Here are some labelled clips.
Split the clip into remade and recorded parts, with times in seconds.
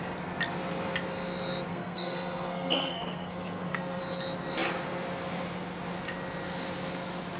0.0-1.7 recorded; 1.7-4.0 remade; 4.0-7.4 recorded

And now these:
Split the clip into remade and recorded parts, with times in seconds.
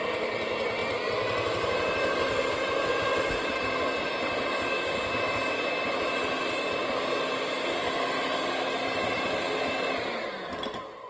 0.0-11.1 recorded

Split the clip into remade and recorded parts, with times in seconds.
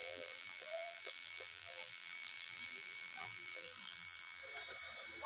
0.0-4.4 remade; 4.4-5.3 recorded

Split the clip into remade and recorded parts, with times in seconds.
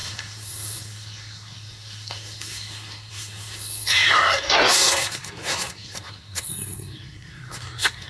0.0-8.1 remade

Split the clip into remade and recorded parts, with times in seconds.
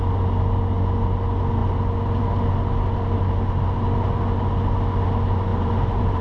0.0-5.5 recorded; 5.5-6.2 remade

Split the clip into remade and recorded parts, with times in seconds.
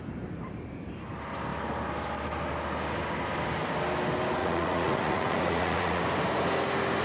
0.0-4.4 recorded; 4.4-6.0 remade; 6.0-7.0 recorded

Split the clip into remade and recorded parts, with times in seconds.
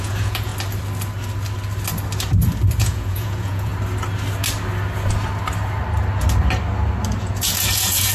0.0-0.5 remade; 0.5-2.8 recorded; 2.8-3.7 remade; 3.7-7.2 recorded; 7.2-8.1 remade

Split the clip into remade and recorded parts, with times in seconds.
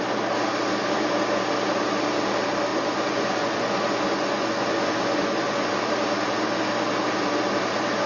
0.0-2.7 recorded; 2.7-5.7 remade; 5.7-8.1 recorded